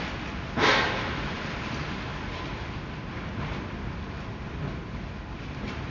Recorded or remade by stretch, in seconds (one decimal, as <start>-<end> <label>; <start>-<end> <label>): 0.0-5.9 recorded